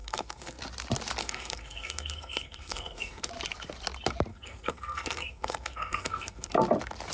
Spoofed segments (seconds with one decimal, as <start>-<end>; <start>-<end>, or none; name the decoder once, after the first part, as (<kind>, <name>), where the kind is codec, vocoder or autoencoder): 0.0-0.6 (codec, SNAC); 1.2-3.3; 4.3-6.5